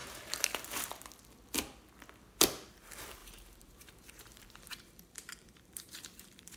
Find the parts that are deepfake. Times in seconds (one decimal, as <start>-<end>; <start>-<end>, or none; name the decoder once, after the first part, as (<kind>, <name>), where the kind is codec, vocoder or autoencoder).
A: 2.7-6.6 (vocoder, BigVGAN v2)